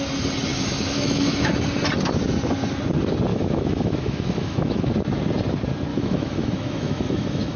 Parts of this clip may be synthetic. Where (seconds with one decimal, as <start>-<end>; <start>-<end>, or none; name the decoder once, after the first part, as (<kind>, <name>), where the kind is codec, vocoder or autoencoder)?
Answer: 0.5-1.5 (autoencoder, DAC-VAE); 3.3-4.9; 5.9-7.6